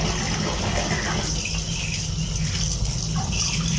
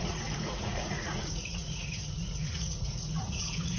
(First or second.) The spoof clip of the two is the second